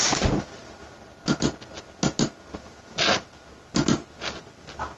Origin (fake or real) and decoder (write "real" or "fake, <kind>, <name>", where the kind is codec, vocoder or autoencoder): real